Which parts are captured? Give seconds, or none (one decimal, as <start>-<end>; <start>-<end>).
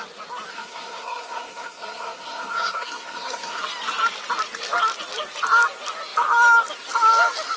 0.0-0.5; 3.6-7.6